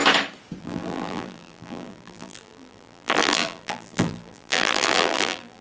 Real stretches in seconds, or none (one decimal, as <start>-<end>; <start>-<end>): 0.0-0.6